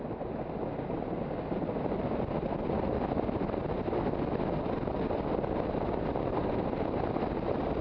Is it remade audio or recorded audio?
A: recorded